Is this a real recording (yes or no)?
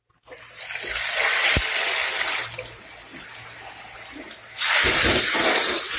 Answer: yes